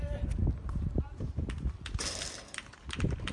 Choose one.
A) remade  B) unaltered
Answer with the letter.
B